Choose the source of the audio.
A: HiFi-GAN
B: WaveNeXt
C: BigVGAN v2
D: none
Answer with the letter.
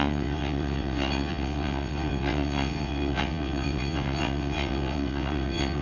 B